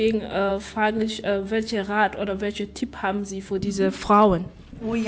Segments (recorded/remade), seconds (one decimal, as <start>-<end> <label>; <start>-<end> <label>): 0.0-0.5 recorded; 0.5-3.6 remade; 3.6-5.1 recorded